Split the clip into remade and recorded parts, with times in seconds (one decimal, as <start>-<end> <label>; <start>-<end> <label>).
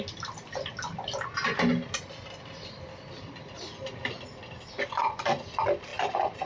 0.0-6.5 recorded